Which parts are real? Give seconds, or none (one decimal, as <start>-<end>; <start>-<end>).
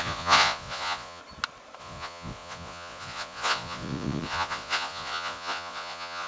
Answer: 1.2-1.8